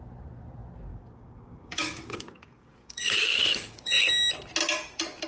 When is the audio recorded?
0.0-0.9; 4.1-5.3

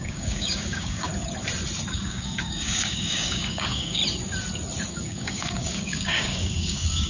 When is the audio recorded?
1.1-1.9; 4.0-4.9

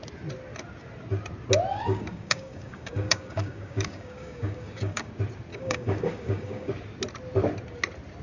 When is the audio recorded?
0.0-1.7; 5.1-5.5; 6.7-8.2

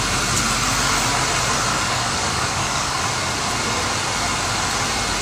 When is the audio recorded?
0.0-1.7; 3.0-5.2

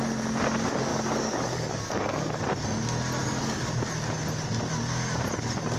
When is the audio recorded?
0.0-0.9; 2.4-3.2; 3.7-5.8

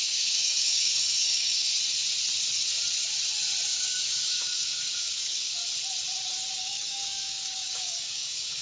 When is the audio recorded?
1.7-3.7; 5.6-6.6

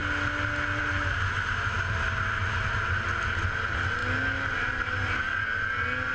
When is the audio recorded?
0.0-6.1

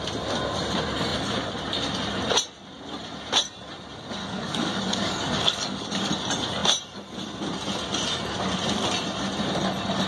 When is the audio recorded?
0.0-4.2; 6.1-10.1